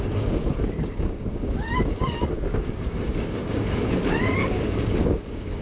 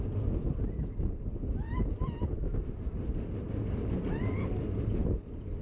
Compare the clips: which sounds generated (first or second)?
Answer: first